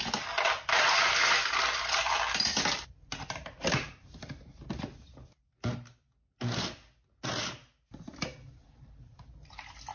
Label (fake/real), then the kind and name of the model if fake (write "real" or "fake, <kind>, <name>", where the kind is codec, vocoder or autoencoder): real